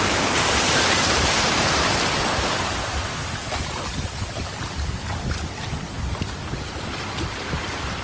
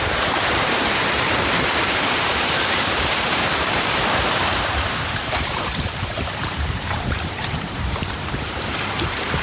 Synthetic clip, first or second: second